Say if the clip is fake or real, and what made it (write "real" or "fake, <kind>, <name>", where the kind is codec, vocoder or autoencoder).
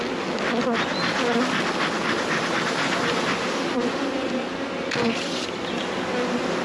real